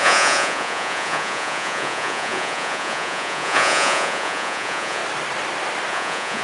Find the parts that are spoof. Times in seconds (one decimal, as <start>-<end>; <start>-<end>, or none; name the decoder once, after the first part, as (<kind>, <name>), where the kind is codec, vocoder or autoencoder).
0.0-5.0 (vocoder, Vocos); 5.9-6.4